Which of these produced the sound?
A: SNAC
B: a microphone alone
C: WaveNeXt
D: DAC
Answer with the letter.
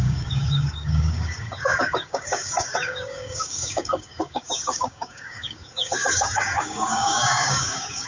D